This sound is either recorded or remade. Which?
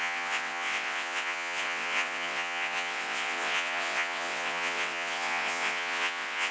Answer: remade